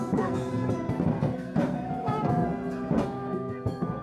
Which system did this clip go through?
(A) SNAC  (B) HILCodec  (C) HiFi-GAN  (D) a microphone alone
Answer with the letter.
A